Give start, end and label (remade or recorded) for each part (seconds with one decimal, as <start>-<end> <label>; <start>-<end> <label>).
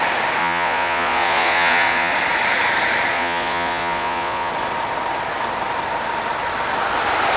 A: 0.0-0.4 recorded; 0.4-2.1 remade; 2.1-3.1 recorded; 3.1-4.5 remade; 4.5-7.4 recorded